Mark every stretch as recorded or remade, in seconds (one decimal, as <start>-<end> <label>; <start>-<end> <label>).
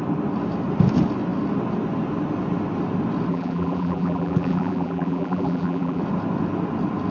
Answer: 0.0-3.3 recorded; 3.3-6.0 remade; 6.0-7.1 recorded